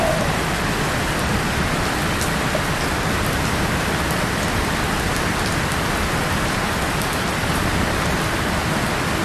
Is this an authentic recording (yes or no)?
yes